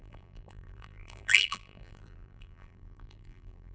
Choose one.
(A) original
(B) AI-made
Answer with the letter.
B